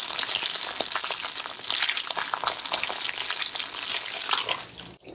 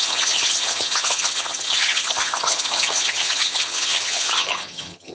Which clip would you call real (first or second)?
first